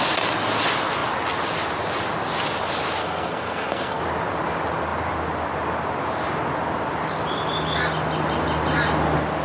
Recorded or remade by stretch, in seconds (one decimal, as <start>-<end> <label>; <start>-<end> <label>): 0.0-3.0 recorded; 3.0-4.0 remade; 4.0-9.4 recorded